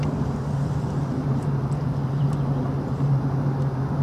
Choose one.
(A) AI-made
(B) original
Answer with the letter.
B